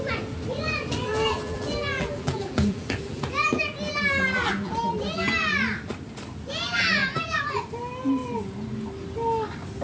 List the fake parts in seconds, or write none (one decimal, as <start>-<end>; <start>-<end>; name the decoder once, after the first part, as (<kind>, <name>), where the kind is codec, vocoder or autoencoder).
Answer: 1.1-4.7 (vocoder, BigVGAN v2); 7.0-7.6